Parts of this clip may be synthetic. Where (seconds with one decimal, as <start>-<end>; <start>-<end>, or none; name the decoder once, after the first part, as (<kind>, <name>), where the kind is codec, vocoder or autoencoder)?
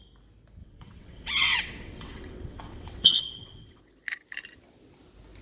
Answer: 0.6-3.8 (vocoder, WaveNeXt)